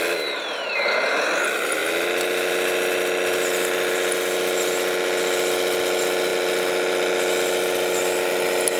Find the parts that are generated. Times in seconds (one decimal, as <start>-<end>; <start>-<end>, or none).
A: none